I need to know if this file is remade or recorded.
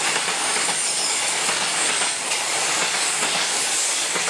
remade